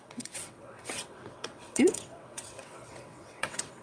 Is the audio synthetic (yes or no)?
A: yes